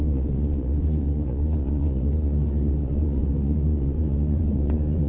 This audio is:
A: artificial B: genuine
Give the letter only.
A